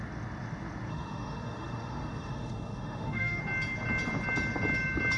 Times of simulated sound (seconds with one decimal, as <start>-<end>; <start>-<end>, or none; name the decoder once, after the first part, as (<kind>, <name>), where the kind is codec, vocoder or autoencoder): 0.9-3.4 (autoencoder, DAC-VAE)